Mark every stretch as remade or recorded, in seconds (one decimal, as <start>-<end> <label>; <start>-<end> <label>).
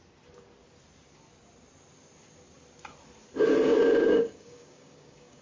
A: 0.0-3.7 recorded; 3.7-5.4 remade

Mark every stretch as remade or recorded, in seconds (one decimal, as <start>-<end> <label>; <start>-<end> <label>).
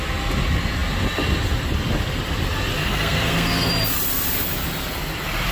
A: 0.0-2.8 recorded; 2.8-3.7 remade; 3.7-5.5 recorded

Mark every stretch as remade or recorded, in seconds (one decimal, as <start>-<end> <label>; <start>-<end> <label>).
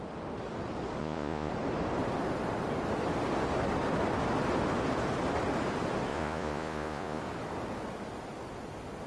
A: 0.0-1.0 recorded; 1.0-1.5 remade; 1.5-6.1 recorded; 6.1-7.2 remade; 7.2-9.1 recorded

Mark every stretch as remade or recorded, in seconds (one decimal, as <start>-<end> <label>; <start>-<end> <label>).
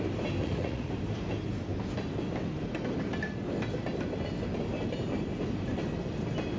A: 0.0-0.4 recorded; 0.4-0.9 remade; 0.9-6.6 recorded